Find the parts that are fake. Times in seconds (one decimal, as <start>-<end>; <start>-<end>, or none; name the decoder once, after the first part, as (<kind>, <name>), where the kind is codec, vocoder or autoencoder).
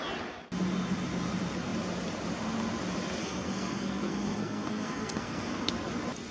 3.2-5.7 (codec, SNAC)